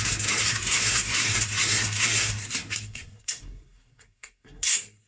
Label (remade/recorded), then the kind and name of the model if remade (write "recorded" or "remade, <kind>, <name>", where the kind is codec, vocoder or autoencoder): remade, codec, SNAC